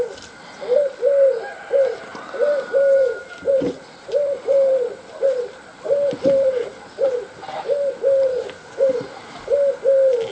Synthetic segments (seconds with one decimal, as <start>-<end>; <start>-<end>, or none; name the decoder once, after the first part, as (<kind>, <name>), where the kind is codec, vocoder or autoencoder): 2.1-7.1 (vocoder, BigVGAN v2)